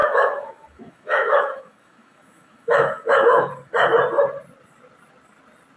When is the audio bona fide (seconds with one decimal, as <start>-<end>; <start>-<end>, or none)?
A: 3.5-5.8